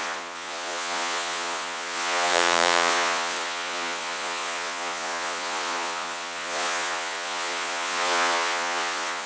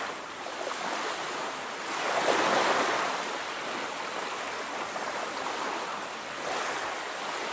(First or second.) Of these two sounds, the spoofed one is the first